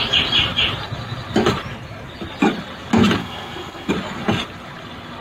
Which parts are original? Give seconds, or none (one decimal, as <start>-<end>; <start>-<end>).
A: 0.0-3.2; 3.9-5.2